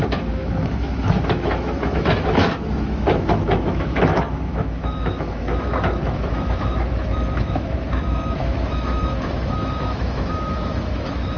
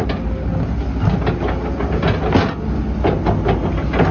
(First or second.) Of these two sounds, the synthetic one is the first